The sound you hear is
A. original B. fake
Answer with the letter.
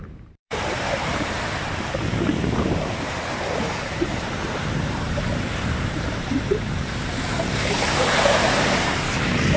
B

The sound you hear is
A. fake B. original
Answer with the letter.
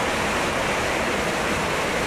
B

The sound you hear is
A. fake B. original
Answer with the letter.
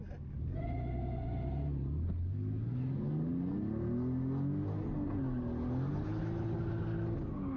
B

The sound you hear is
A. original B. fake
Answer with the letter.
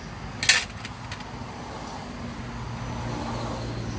A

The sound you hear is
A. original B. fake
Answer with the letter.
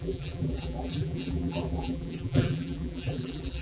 B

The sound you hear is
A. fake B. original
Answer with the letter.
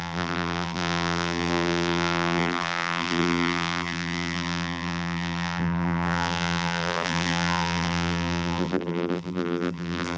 A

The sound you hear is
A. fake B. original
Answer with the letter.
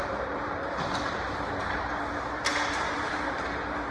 A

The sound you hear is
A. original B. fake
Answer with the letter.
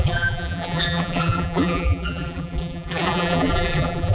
B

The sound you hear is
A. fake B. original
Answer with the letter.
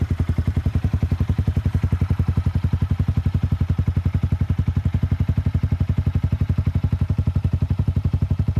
A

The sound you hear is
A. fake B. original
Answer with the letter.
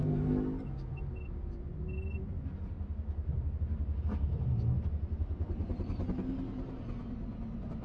B